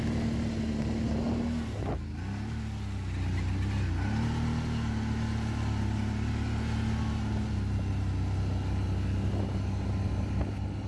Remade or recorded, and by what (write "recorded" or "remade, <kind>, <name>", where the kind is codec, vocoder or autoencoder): recorded